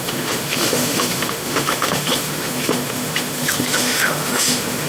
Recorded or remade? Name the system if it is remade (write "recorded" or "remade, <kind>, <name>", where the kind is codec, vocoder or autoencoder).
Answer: remade, autoencoder, DAC-VAE